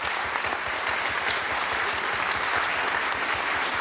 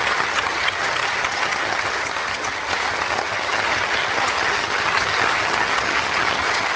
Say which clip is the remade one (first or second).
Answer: second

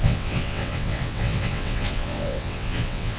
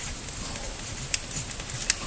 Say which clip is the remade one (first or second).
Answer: first